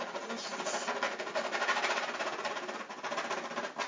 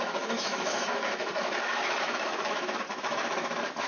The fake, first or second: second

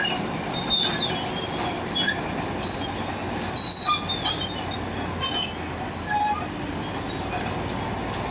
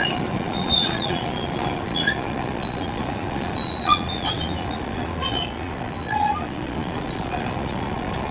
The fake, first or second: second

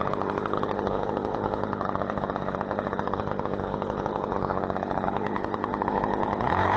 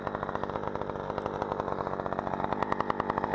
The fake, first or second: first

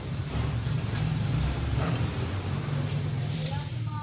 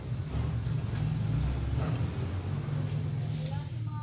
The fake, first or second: first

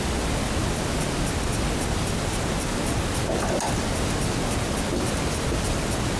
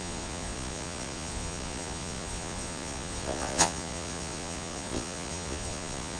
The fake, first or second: second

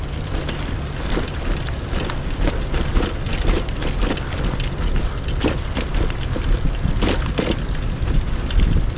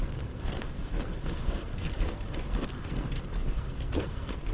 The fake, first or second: second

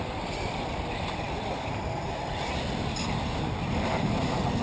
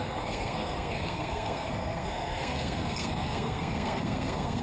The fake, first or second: second